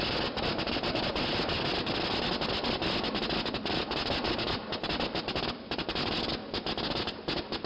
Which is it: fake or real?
real